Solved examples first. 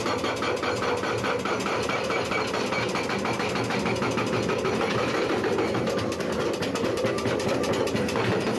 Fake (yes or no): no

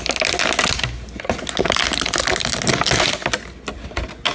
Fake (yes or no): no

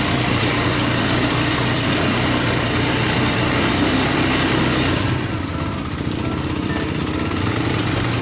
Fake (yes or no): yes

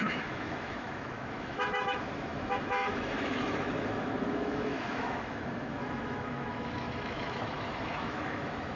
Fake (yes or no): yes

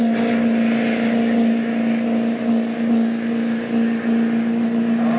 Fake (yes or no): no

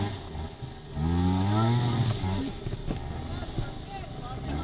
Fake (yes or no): no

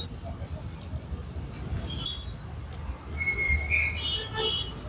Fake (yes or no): no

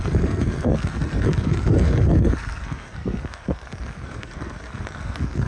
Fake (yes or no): yes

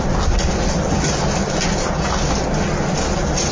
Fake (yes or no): no